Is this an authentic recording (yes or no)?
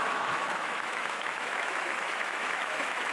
no